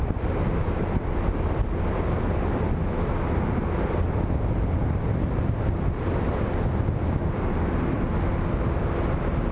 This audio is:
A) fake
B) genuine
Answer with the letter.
B